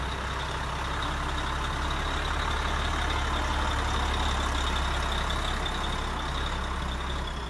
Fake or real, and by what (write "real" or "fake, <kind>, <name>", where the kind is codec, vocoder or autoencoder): real